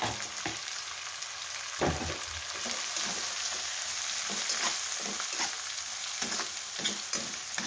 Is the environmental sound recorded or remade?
recorded